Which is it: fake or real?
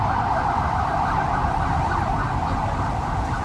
fake